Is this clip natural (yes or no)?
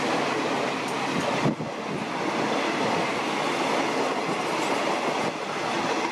yes